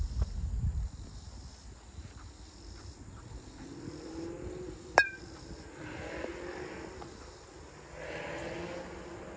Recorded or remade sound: recorded